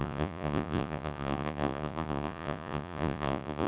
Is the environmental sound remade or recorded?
remade